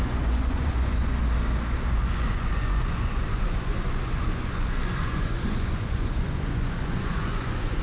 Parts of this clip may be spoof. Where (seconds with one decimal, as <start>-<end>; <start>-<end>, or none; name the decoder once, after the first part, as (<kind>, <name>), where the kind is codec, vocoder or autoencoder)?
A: 0.0-1.2 (vocoder, Vocos); 2.0-7.8